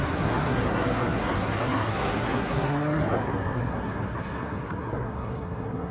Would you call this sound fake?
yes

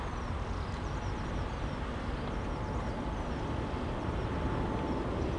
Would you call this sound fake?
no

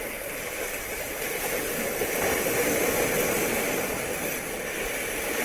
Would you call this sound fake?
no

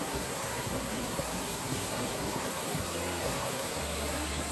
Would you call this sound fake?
yes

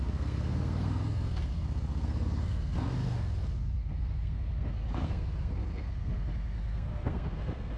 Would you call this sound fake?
yes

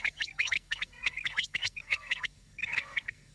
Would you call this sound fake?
yes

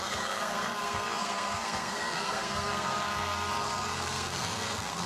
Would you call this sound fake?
yes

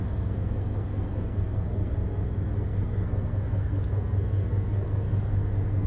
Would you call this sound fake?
yes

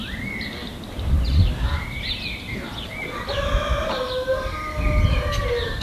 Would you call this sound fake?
no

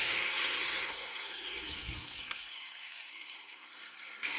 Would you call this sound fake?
yes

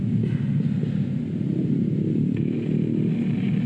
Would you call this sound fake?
no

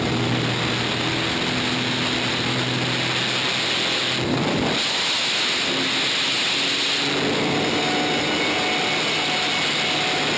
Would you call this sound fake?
no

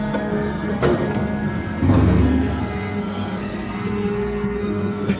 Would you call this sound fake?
yes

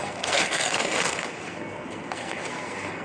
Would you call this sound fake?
yes